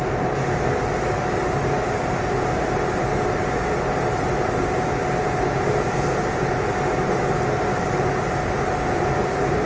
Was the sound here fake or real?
real